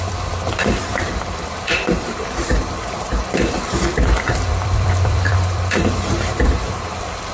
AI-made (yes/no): yes